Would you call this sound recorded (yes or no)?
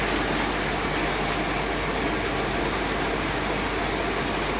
yes